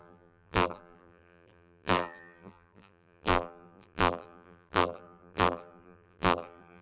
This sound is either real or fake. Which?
fake